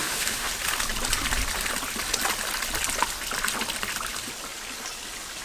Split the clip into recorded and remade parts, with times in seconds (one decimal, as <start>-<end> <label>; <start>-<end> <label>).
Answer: 0.0-0.5 remade; 0.5-5.4 recorded